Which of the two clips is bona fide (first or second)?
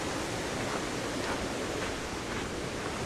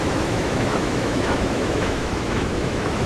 first